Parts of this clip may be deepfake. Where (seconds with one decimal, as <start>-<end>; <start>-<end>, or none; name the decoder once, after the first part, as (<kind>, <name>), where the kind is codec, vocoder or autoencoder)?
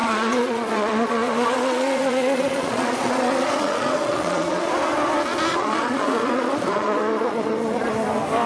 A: 0.0-4.7 (vocoder, Vocos); 5.5-7.9